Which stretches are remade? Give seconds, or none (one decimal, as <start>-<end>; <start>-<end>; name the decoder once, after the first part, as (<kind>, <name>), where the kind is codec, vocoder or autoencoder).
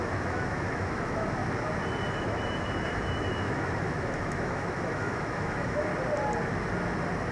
0.0-1.4 (autoencoder, DAC-VAE); 2.1-5.9